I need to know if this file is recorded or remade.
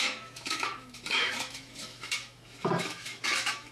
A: remade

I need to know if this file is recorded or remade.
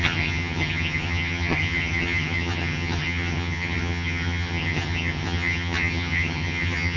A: remade